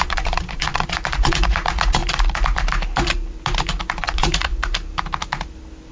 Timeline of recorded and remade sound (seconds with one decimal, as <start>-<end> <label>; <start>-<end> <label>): 0.0-2.0 remade; 2.0-3.6 recorded; 3.6-4.5 remade; 4.5-5.9 recorded